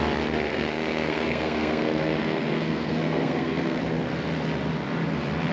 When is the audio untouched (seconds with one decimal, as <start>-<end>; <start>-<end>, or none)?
0.0-0.5; 3.8-5.5